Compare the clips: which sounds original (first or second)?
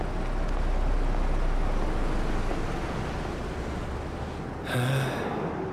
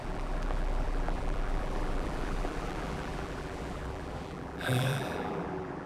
first